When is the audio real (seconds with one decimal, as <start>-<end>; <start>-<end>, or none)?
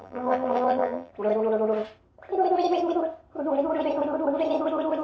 1.1-5.0